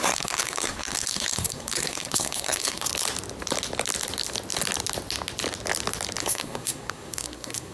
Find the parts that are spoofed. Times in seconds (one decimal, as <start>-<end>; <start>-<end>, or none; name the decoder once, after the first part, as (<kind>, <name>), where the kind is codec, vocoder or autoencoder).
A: 0.0-2.9 (codec, SNAC); 6.2-7.7